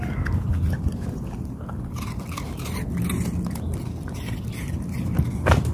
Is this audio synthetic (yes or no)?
no